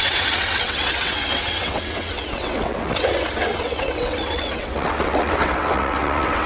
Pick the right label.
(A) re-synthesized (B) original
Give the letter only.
A